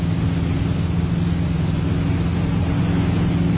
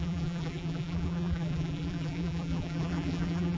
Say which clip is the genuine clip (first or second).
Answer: first